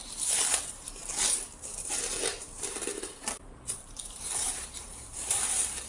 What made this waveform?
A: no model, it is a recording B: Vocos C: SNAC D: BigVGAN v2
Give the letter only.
D